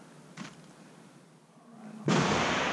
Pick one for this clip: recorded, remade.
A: recorded